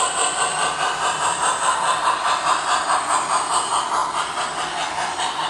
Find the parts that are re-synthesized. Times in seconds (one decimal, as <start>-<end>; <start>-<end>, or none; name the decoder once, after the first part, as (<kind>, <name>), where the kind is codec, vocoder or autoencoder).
none